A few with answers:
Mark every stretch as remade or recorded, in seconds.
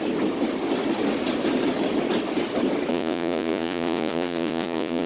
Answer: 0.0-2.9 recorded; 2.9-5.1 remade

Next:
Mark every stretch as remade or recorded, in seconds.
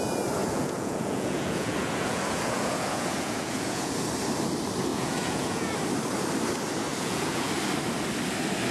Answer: 0.0-0.4 recorded; 0.4-3.9 remade; 3.9-4.9 recorded; 4.9-5.7 remade; 5.7-6.9 recorded; 6.9-7.5 remade; 7.5-8.7 recorded